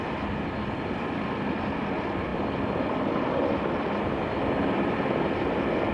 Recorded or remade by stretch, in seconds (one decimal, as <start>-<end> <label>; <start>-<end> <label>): 0.0-5.9 recorded